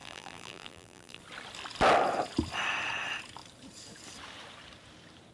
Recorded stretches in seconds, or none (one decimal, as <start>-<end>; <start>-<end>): 1.2-5.3